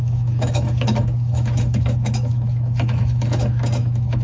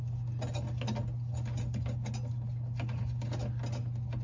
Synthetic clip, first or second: first